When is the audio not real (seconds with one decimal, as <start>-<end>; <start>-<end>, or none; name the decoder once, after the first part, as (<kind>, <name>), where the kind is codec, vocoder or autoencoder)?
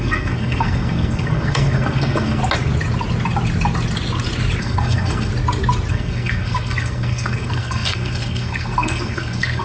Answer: 0.0-2.4 (codec, SNAC); 4.6-5.3; 5.9-9.6